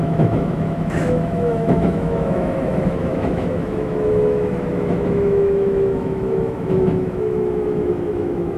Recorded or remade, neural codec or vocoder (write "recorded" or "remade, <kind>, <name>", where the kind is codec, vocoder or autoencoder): remade, autoencoder, DAC-VAE